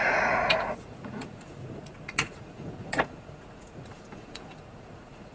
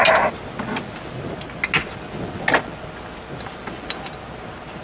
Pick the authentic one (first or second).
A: second